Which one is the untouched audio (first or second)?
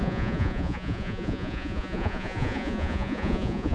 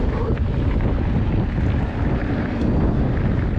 second